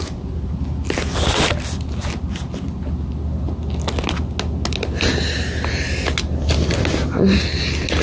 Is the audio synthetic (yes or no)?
no